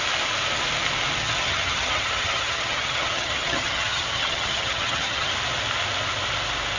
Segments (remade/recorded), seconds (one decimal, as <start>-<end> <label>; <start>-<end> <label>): 0.0-1.2 recorded; 1.2-5.3 remade; 5.3-6.8 recorded